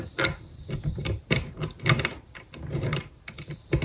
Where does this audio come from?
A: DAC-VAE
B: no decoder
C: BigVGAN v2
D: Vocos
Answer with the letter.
C